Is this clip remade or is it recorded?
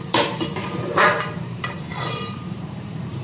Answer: remade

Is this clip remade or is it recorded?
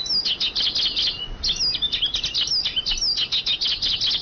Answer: recorded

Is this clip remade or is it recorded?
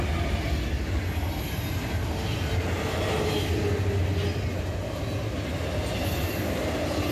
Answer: recorded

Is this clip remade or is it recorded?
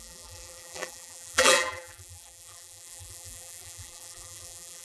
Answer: remade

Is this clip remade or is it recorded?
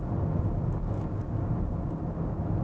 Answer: recorded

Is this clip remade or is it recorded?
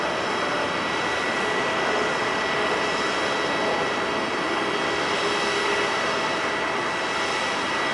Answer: recorded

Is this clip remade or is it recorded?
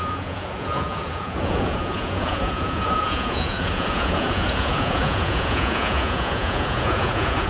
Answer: remade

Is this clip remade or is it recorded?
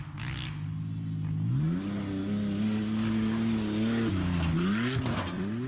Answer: recorded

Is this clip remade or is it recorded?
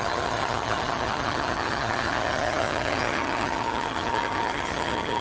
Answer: remade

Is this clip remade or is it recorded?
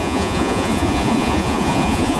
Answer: remade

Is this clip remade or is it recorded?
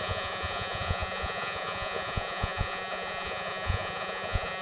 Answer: remade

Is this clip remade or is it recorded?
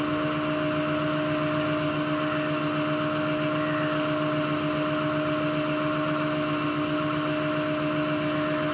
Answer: recorded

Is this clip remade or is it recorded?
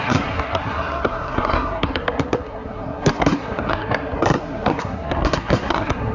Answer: remade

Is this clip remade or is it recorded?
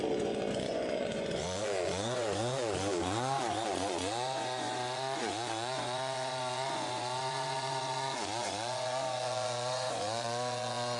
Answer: remade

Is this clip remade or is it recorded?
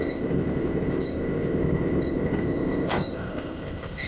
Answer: remade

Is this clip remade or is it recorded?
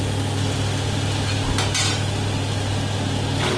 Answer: recorded